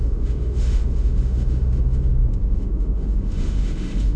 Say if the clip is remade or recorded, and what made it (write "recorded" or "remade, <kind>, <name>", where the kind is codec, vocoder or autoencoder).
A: remade, autoencoder, DAC-VAE